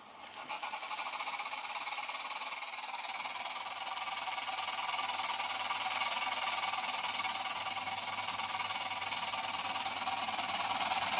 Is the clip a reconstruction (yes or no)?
no